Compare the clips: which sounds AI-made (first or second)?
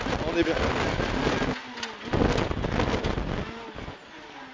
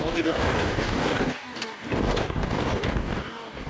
second